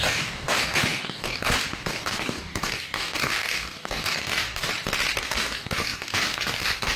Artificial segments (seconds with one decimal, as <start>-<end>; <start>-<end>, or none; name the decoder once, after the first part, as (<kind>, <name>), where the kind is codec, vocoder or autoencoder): 0.0-4.7 (codec, DAC); 5.2-7.0